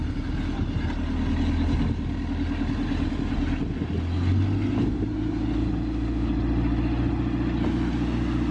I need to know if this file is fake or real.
real